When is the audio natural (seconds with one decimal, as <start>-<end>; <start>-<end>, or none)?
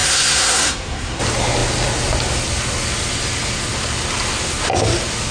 1.2-5.3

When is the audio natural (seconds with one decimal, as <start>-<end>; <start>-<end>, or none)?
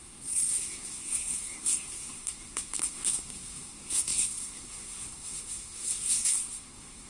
none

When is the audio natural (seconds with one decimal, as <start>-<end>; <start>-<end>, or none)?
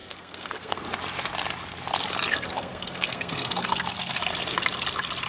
0.8-2.3; 4.2-5.3